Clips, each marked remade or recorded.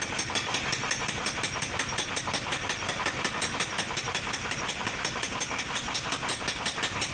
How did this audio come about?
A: recorded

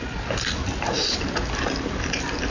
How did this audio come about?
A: recorded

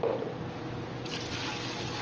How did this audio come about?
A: recorded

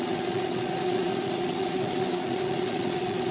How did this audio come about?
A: remade